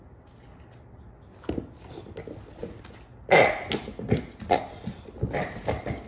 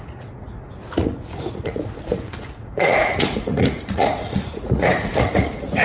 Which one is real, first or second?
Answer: first